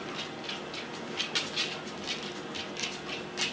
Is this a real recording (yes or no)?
yes